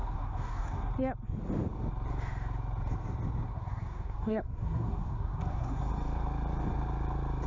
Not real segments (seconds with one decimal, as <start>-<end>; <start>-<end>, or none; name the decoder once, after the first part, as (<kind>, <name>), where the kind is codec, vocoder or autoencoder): 0.0-0.9 (codec, SNAC); 3.5-5.8

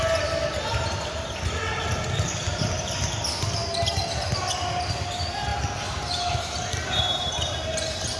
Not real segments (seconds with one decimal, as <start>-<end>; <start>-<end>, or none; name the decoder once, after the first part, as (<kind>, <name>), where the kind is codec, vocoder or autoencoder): none

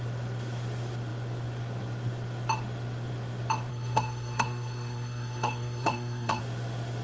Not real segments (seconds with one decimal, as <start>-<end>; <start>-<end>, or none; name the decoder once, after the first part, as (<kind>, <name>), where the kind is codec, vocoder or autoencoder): 3.7-6.4 (codec, SNAC)

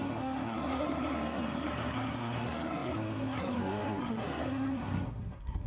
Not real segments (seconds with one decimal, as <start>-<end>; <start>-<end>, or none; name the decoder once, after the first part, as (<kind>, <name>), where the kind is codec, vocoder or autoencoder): 0.0-5.7 (codec, SNAC)

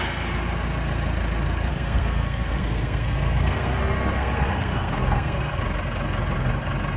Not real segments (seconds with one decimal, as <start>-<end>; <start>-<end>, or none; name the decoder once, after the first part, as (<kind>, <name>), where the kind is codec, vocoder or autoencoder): 1.7-5.6 (codec, SNAC)

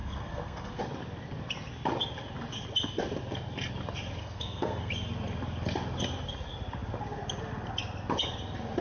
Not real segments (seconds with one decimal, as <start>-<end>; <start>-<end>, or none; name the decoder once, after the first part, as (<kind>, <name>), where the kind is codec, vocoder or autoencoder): 0.0-0.8 (codec, SNAC); 4.2-4.9